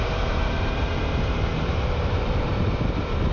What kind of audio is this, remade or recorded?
remade